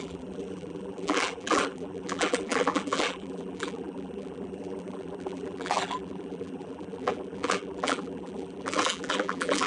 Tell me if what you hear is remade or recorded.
remade